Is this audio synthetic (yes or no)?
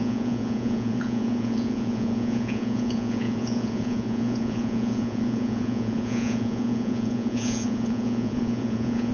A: yes